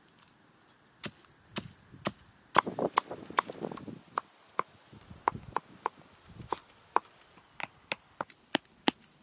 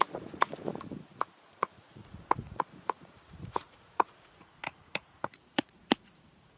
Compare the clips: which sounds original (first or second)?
first